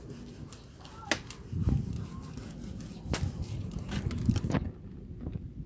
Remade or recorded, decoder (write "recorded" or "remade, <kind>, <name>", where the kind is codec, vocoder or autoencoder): recorded